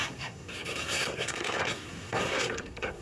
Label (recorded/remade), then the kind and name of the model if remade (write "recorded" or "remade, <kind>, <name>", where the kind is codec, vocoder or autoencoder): remade, codec, SNAC